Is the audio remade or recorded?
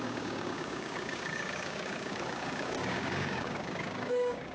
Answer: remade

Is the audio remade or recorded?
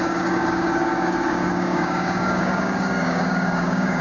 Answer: remade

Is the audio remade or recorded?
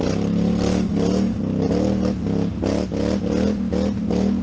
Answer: recorded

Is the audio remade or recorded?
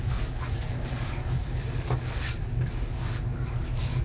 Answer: remade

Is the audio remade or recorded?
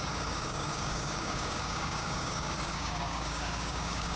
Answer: remade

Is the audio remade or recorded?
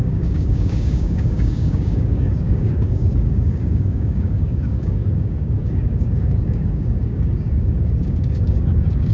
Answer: remade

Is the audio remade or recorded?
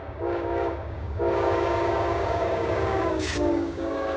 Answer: remade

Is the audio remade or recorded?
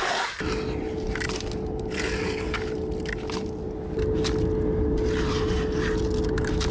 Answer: recorded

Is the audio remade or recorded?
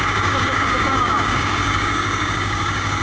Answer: remade